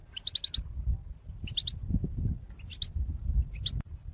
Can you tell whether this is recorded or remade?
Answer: recorded